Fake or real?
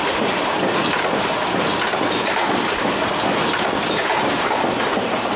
real